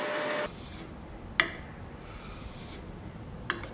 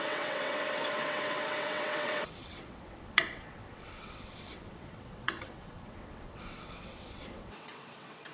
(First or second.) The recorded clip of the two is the first